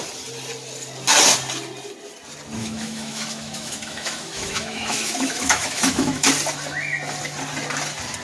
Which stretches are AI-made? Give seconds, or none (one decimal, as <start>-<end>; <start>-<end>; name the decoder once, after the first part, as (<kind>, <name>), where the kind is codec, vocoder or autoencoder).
2.6-6.3 (autoencoder, DAC-VAE)